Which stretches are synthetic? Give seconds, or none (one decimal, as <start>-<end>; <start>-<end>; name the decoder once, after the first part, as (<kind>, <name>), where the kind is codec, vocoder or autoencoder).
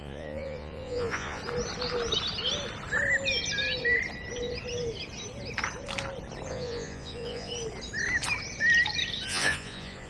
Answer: 0.0-1.4 (vocoder, Vocos); 6.5-7.5; 9.3-10.1